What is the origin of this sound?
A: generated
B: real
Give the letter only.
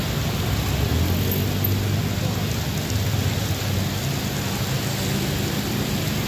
B